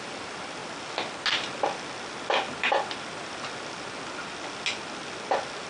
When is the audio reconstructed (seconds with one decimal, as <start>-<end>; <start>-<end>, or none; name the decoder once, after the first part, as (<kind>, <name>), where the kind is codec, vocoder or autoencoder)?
0.6-1.1 (vocoder, BigVGAN v2)